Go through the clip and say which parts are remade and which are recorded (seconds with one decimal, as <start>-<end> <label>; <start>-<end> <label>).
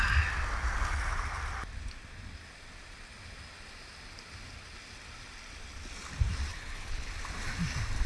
0.0-6.5 recorded; 6.5-7.1 remade; 7.1-8.1 recorded